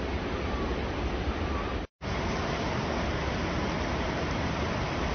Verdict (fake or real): real